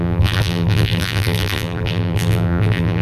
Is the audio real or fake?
fake